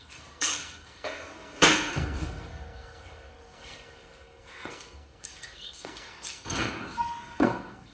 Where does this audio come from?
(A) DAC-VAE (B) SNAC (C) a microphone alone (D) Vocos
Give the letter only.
B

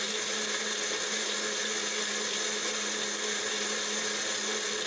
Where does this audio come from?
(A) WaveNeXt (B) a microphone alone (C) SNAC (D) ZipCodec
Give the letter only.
B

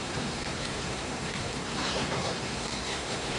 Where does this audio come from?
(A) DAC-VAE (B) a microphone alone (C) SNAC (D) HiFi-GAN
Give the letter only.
C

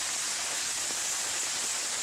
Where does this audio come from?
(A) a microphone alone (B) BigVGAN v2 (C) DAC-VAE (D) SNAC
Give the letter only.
A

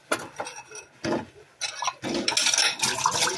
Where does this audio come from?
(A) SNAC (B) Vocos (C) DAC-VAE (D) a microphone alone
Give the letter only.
D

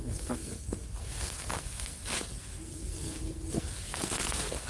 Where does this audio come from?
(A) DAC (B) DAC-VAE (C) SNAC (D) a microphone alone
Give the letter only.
C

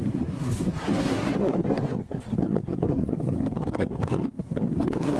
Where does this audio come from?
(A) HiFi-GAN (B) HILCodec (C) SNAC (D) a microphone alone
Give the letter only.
C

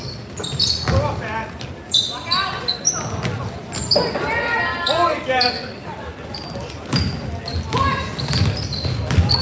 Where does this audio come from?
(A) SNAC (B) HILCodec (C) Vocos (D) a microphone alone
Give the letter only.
D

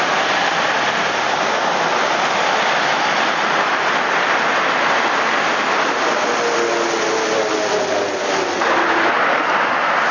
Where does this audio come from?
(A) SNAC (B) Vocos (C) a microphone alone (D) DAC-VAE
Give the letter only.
C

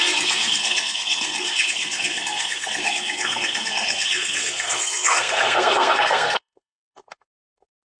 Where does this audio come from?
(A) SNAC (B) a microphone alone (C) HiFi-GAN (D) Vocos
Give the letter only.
A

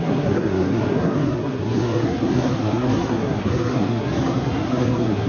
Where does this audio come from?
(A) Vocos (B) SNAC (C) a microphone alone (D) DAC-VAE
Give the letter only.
B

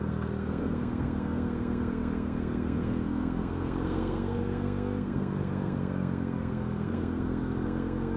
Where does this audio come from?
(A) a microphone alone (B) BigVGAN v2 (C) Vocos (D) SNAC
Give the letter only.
D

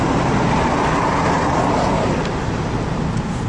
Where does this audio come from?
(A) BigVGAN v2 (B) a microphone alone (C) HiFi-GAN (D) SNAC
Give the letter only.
B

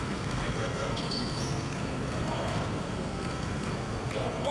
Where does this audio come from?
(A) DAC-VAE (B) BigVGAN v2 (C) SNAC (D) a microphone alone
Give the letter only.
C